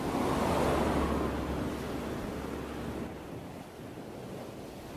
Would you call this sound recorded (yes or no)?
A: yes